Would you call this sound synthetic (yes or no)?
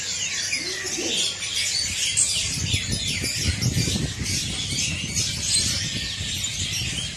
no